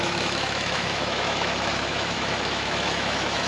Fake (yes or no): yes